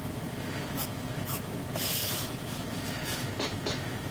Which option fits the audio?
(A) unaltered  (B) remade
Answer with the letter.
B